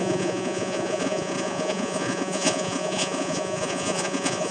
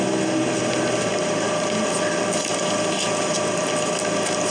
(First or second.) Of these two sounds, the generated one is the first